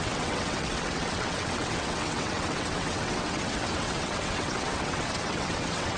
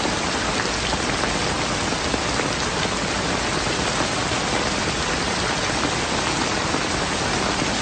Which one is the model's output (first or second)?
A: first